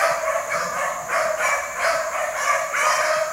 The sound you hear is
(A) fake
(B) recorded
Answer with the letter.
B